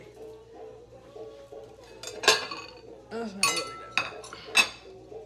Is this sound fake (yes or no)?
no